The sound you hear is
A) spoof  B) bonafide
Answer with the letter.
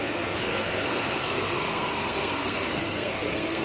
A